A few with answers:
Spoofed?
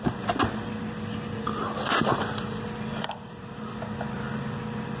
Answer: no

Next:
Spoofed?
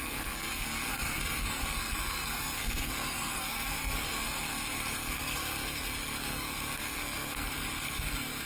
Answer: yes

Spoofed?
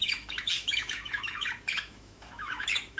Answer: yes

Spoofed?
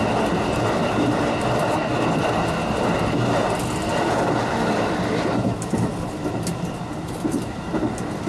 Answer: no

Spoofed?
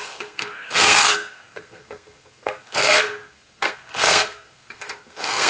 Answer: yes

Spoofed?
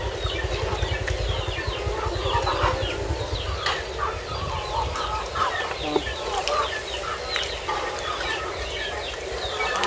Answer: no